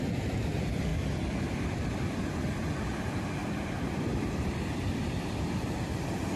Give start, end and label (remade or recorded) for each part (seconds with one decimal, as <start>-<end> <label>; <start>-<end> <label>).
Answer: 0.0-0.9 recorded; 0.9-3.0 remade; 3.0-3.4 recorded; 3.4-5.6 remade; 5.6-6.4 recorded